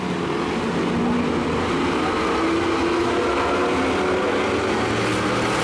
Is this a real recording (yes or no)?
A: yes